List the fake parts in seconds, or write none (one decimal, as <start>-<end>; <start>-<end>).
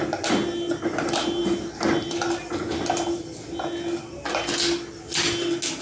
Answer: none